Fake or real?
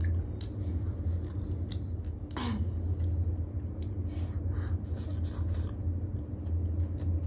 real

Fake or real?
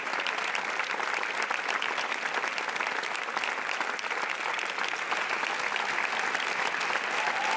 real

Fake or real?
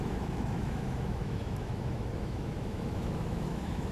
fake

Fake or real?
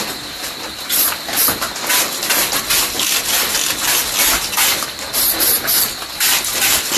real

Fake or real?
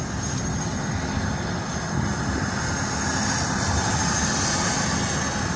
real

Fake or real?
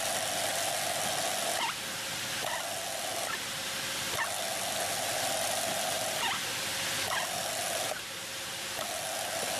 real